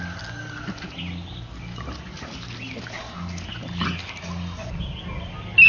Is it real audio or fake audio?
real